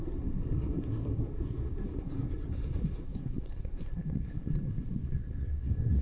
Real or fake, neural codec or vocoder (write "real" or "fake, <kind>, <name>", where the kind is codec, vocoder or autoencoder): fake, codec, SNAC